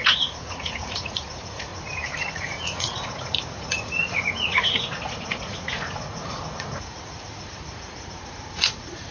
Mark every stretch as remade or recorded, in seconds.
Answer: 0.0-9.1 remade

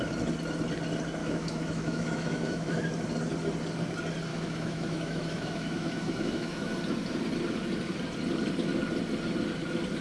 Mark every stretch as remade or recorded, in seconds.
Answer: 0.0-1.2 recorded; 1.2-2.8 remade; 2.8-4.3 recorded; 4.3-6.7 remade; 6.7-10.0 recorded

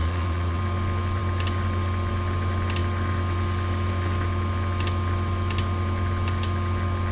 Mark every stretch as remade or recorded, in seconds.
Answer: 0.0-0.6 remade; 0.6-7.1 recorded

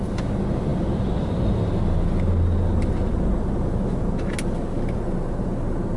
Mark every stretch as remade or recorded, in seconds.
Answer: 0.0-6.0 recorded